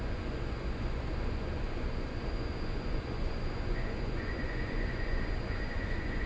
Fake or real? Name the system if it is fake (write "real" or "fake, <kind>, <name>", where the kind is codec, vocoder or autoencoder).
fake, vocoder, Vocos